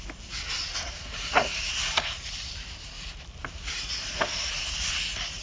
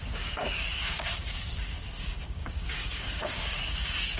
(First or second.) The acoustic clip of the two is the first